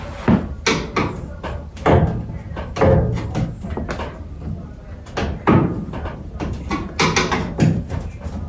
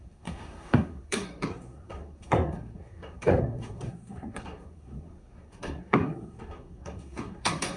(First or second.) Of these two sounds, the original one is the first